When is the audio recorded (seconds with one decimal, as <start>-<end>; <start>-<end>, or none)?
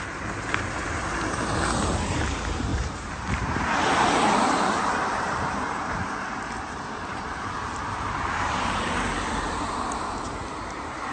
none